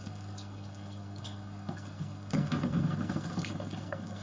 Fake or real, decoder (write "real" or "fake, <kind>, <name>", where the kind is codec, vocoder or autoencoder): fake, codec, SNAC